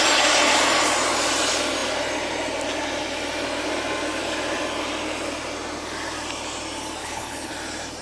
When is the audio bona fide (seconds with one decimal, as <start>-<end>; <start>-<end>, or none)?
0.0-7.0; 7.5-8.0